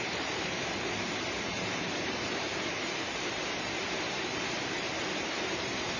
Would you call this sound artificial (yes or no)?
yes